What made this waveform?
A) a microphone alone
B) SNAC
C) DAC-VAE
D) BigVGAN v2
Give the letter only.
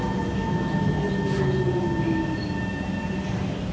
A